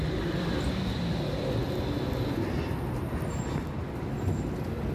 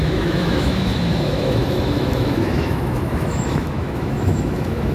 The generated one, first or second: second